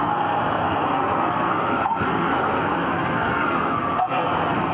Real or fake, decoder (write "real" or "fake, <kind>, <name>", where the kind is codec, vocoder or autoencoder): fake, codec, SNAC